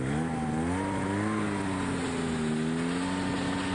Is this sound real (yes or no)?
yes